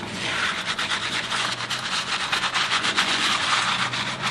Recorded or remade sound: remade